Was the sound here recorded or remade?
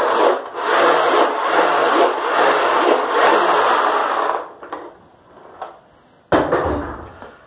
recorded